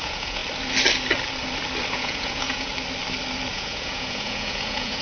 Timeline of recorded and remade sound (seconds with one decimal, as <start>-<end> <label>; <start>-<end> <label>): 0.0-0.4 remade; 0.4-1.9 recorded; 1.9-2.7 remade; 2.7-3.5 recorded; 3.5-5.0 remade